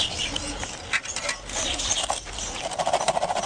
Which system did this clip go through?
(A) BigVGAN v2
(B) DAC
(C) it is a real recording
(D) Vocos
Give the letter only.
C